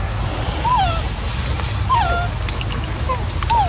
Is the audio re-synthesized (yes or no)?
no